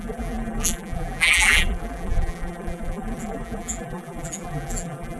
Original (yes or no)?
no